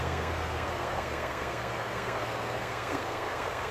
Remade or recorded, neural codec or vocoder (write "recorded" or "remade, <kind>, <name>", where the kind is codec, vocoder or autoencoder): remade, codec, SNAC